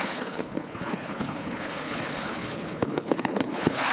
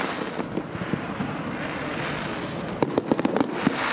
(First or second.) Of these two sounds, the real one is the second